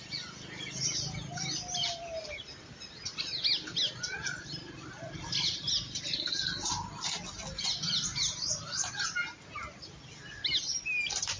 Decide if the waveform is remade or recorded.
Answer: recorded